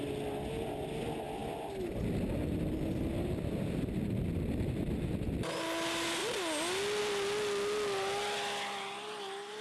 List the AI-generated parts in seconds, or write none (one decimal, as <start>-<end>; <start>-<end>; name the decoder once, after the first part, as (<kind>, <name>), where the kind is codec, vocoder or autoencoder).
none